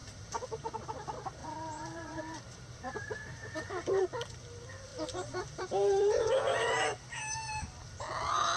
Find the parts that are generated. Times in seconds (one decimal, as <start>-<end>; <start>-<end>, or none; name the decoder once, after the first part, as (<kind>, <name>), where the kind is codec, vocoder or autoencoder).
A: 0.0-0.7 (vocoder, BigVGAN v2); 1.4-4.0; 4.9-6.3